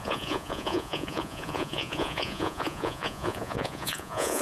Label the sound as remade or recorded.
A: remade